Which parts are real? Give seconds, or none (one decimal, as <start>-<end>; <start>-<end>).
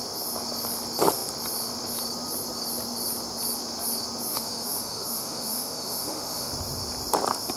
0.0-4.3; 6.5-7.6